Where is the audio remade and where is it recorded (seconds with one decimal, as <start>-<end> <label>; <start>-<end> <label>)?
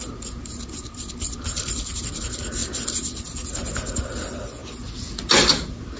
0.0-6.0 recorded